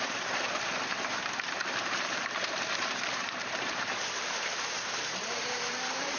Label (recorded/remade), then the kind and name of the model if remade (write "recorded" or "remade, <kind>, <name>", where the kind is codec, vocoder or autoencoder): remade, vocoder, BigVGAN v2